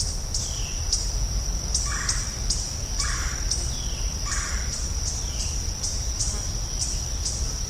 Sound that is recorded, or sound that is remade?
recorded